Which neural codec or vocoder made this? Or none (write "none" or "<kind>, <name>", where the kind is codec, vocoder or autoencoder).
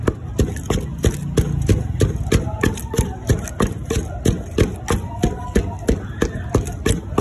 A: none